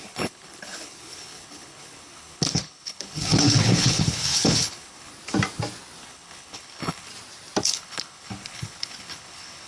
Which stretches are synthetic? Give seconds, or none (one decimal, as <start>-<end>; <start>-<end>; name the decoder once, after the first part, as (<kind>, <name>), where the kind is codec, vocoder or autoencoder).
0.0-5.1 (codec, HILCodec); 6.0-7.1; 7.6-9.7